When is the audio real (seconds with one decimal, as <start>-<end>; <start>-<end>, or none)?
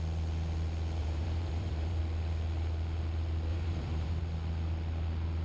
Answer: 0.0-1.0; 2.0-3.5; 4.2-5.4